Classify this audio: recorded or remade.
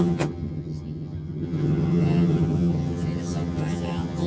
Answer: remade